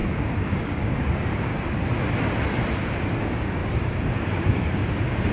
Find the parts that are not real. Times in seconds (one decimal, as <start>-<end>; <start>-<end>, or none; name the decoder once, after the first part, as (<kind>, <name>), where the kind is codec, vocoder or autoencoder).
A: 0.0-1.5 (codec, DAC); 2.7-5.3